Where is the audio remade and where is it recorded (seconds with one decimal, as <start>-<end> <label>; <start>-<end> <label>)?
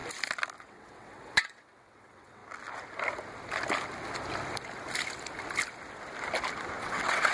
0.0-0.6 recorded; 0.6-2.4 remade; 2.4-6.8 recorded; 6.8-7.3 remade